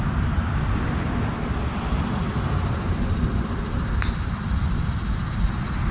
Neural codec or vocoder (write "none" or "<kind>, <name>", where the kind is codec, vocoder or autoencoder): none